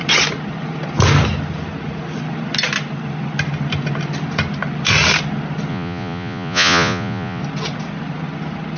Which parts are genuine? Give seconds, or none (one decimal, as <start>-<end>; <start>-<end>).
0.0-5.7; 7.4-8.8